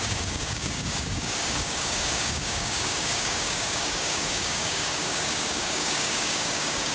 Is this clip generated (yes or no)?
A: yes